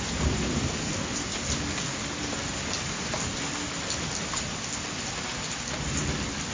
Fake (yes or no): no